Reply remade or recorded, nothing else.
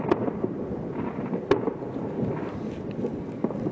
recorded